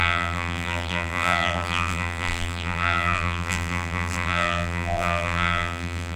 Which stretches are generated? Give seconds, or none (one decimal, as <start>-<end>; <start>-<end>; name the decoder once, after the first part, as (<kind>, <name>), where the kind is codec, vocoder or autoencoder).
0.0-6.2 (vocoder, BigVGAN v2)